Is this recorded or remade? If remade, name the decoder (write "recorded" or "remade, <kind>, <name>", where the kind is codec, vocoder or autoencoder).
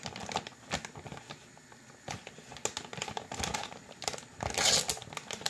recorded